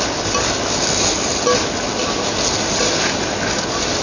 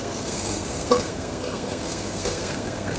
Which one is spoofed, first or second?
second